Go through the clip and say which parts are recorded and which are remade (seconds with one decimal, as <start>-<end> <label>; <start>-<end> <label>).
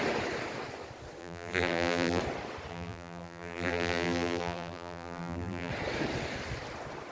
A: 0.0-1.2 recorded; 1.2-2.2 remade; 2.2-2.7 recorded; 2.7-5.7 remade; 5.7-7.1 recorded